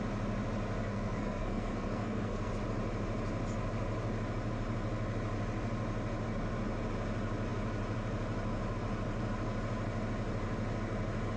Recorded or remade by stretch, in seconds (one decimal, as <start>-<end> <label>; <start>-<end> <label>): 0.0-0.8 recorded; 0.8-2.5 remade; 2.5-11.4 recorded